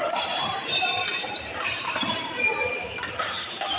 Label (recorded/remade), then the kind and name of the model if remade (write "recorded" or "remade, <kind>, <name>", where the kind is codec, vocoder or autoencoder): remade, vocoder, BigVGAN v2